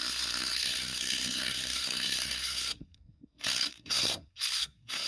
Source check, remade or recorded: remade